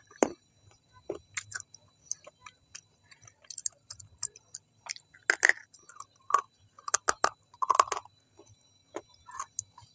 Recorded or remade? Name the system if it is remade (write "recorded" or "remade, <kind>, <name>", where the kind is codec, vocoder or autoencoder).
recorded